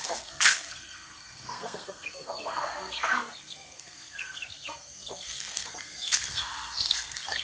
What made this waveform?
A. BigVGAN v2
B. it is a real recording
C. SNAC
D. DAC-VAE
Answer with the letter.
C